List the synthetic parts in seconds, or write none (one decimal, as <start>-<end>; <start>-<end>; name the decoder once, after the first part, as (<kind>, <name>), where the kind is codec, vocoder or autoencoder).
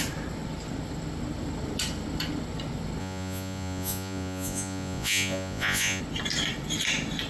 3.0-6.0 (vocoder, Vocos)